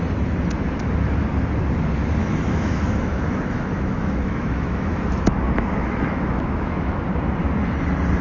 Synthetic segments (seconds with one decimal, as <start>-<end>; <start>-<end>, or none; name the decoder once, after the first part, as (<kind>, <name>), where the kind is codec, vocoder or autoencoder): 2.2-7.0 (autoencoder, DAC-VAE)